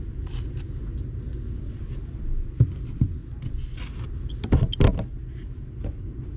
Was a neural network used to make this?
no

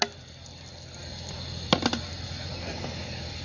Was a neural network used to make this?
no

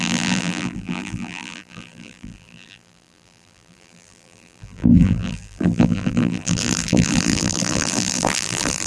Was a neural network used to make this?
yes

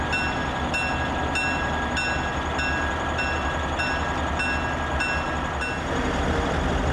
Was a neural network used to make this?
no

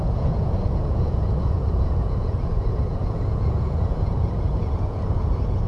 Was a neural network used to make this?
yes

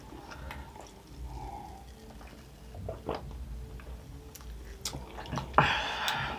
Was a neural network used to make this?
no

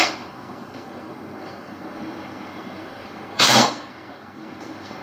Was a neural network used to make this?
yes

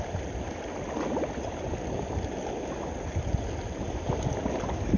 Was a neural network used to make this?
no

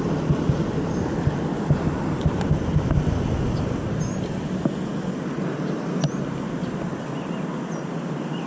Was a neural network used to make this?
no